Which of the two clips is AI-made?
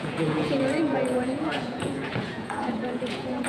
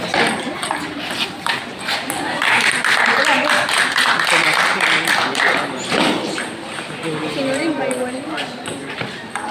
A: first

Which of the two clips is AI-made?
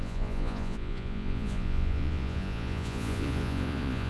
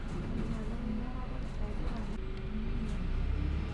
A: first